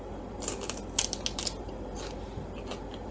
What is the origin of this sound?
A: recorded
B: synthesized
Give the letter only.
A